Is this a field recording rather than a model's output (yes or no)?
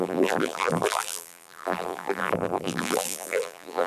no